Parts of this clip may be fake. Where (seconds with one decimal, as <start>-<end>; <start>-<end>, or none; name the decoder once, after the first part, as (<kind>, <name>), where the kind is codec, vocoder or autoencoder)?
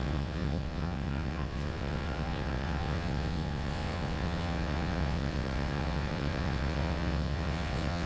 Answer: 0.0-8.1 (vocoder, WaveNeXt)